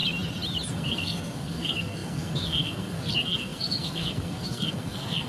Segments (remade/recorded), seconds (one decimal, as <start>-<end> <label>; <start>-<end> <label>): 0.0-0.7 recorded; 0.7-5.3 remade